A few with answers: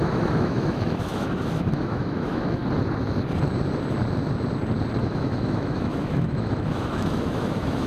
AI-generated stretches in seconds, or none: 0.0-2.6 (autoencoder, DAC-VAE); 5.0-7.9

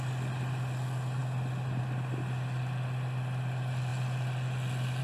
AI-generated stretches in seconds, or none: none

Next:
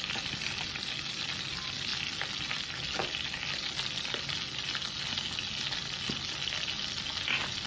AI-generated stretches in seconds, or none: none

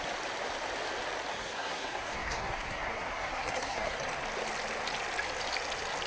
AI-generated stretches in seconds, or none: 1.3-4.0 (codec, SNAC)

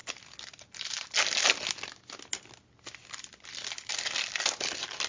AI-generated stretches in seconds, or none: 3.1-5.1 (vocoder, BigVGAN v2)

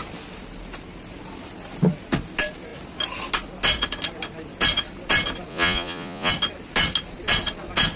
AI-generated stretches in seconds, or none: 5.5-6.3 (vocoder, Vocos)

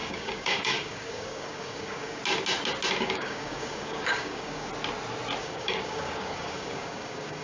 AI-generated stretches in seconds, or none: 0.0-2.2 (codec, DAC); 3.0-4.7; 5.4-7.4

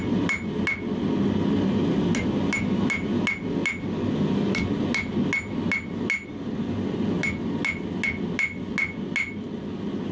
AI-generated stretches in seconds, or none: none